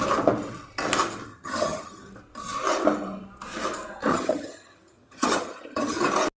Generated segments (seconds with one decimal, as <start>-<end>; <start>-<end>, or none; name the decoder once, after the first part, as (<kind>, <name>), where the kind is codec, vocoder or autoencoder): 1.3-2.1 (vocoder, HiFi-GAN); 4.1-6.0

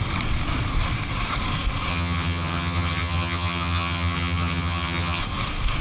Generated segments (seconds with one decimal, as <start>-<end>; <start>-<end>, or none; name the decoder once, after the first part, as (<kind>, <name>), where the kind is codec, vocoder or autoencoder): 1.9-5.2 (vocoder, HiFi-GAN)

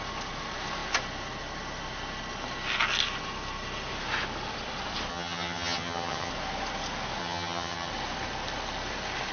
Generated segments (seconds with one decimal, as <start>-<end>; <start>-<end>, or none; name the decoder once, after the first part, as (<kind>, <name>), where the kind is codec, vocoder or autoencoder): 5.1-6.3 (vocoder, HiFi-GAN); 7.2-7.9

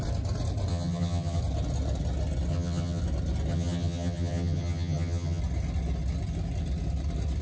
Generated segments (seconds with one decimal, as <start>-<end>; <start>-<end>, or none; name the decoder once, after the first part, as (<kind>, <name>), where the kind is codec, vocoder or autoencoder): 0.7-1.4 (vocoder, HiFi-GAN); 2.5-3.0; 3.5-5.4

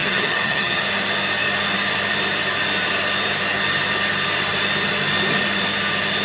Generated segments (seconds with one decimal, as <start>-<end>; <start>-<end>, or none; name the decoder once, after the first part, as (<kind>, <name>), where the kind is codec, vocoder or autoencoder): 0.0-0.8 (vocoder, HiFi-GAN)